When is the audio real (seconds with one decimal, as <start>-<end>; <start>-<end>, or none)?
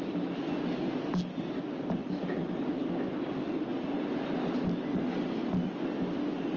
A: 0.0-6.6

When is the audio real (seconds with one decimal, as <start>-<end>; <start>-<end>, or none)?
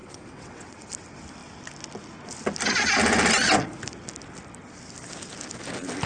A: 0.9-6.1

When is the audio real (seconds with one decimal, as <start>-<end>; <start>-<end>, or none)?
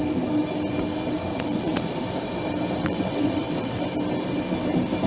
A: 0.0-1.3; 1.9-2.8; 3.8-5.1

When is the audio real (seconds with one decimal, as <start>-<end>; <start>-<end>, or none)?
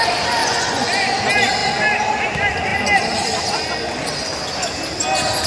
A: 0.0-0.4; 1.2-5.5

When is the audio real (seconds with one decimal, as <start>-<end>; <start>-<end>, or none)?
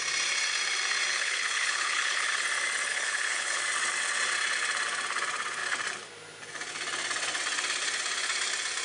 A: 0.0-1.1; 2.4-2.9; 3.6-8.8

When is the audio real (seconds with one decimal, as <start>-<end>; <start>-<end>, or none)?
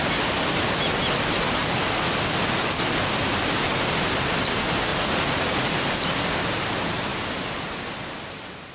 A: 0.0-4.9; 5.7-8.7